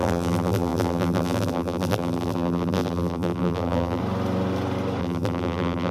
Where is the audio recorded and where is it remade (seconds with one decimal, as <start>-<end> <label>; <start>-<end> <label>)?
0.0-4.0 remade; 4.0-5.0 recorded; 5.0-5.9 remade